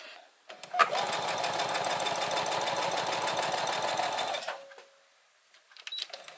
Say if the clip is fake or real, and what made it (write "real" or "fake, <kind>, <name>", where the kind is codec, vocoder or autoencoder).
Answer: real